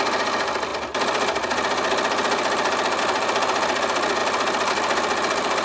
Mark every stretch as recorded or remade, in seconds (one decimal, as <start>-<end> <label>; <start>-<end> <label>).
0.0-5.6 recorded